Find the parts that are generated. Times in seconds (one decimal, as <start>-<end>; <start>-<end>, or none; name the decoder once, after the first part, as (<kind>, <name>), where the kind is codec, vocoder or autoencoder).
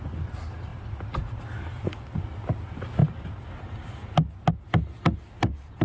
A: none